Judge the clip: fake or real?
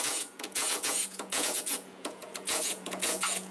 fake